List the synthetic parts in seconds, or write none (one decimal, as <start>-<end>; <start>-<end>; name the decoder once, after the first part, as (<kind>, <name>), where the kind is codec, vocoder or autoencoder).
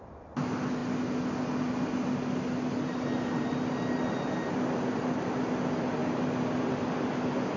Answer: none